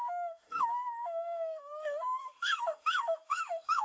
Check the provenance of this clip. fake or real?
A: fake